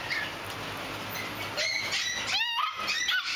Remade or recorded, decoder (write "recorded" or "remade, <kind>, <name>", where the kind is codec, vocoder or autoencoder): recorded